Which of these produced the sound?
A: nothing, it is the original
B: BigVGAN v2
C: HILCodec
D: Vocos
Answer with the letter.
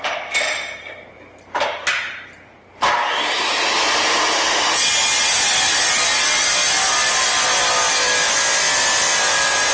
A